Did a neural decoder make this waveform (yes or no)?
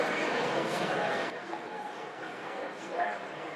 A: yes